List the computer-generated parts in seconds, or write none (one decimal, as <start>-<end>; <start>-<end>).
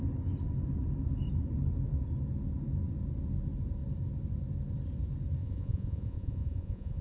5.4-7.0